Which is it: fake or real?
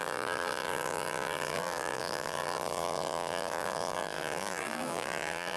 fake